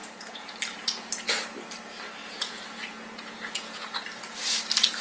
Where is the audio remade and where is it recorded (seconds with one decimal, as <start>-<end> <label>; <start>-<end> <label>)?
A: 0.0-0.5 remade; 0.5-2.2 recorded; 2.2-4.0 remade; 4.0-5.0 recorded